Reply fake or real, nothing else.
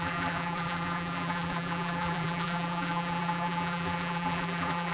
fake